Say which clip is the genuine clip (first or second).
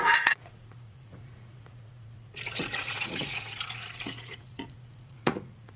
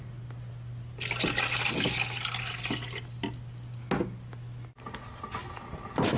second